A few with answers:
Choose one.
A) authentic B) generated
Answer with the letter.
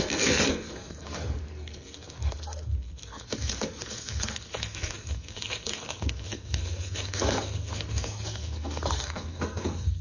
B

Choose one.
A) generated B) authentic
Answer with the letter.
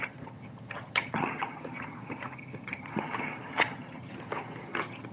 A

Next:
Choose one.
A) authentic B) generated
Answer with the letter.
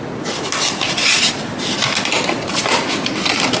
A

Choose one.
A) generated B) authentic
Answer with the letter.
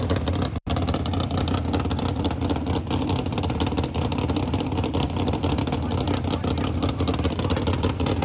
B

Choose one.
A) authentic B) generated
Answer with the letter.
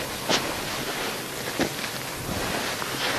A